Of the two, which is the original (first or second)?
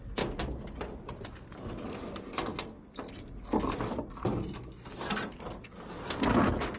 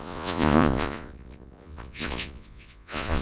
first